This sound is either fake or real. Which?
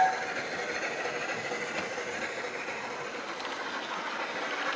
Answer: real